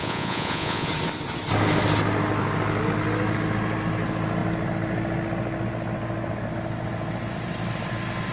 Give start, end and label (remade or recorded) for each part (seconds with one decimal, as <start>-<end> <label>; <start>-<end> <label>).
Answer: 0.0-0.9 remade; 0.9-8.3 recorded